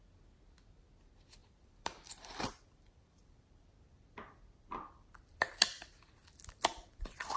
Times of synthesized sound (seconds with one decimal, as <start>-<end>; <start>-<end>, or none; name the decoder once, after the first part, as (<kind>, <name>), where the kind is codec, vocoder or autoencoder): 1.4-5.5 (vocoder, BigVGAN v2)